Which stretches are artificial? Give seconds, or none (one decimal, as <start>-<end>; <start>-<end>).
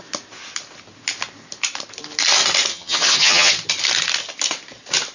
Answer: 2.7-3.5